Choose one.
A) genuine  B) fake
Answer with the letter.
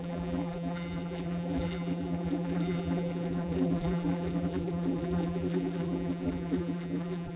B